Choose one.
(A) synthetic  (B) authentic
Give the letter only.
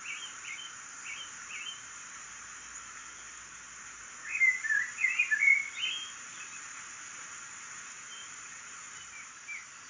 A